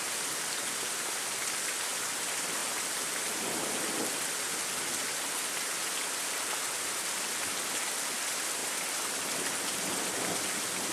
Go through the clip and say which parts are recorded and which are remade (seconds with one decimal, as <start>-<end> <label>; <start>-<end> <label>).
0.0-10.9 recorded